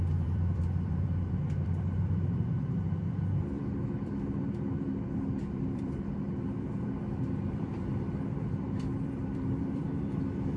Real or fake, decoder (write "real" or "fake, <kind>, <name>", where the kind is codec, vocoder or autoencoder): fake, vocoder, BigVGAN v2